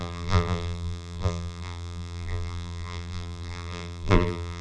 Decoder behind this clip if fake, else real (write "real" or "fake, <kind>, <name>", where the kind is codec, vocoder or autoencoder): fake, vocoder, BigVGAN v2